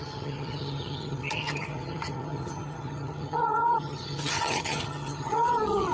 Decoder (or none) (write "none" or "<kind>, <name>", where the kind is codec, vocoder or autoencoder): vocoder, HiFi-GAN